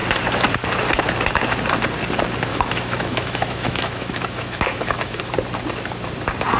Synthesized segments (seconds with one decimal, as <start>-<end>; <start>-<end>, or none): 2.5-5.2